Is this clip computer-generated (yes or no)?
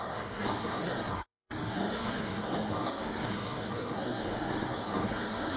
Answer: yes